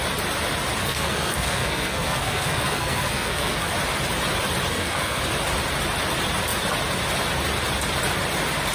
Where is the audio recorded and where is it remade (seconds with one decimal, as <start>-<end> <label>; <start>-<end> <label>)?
0.0-0.8 recorded; 0.8-3.7 remade; 3.7-4.7 recorded; 4.7-5.2 remade; 5.2-8.7 recorded